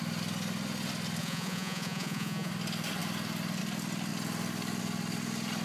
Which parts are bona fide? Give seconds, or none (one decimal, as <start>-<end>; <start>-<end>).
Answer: 0.0-1.2; 2.5-5.6